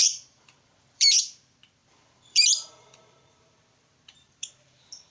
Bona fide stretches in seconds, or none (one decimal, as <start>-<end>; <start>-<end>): 1.2-1.8